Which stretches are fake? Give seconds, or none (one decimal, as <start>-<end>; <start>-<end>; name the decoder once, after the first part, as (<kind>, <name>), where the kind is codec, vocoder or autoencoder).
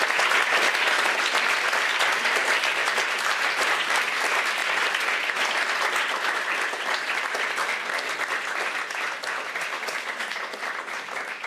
2.8-4.0 (vocoder, BigVGAN v2)